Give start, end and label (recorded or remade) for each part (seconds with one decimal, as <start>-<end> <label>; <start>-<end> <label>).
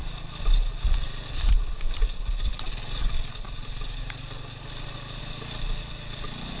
0.0-6.6 recorded